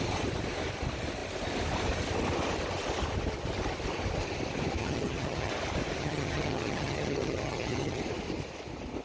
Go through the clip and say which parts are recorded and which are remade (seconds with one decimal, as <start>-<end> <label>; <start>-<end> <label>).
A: 0.0-4.8 recorded; 4.8-5.5 remade; 5.5-6.0 recorded; 6.0-8.0 remade; 8.0-9.0 recorded